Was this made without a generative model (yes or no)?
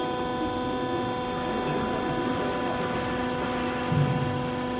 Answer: yes